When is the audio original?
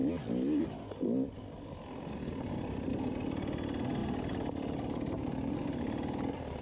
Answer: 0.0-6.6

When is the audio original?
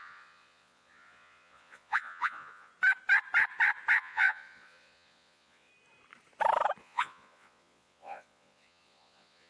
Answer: 2.7-4.0; 5.7-6.8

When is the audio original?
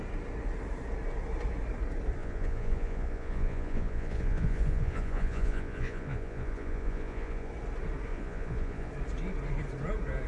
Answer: 0.0-2.2; 7.5-8.1; 8.9-10.3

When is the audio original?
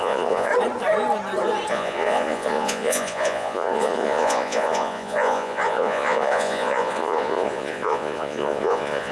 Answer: 0.5-1.7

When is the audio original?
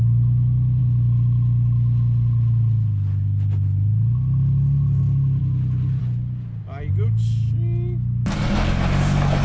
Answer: 0.0-9.4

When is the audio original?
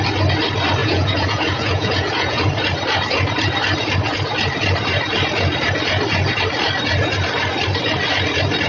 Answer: 0.0-0.8; 2.4-8.7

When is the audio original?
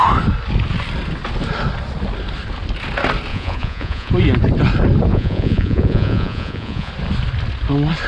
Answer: 0.0-3.3; 4.1-5.1; 6.9-8.1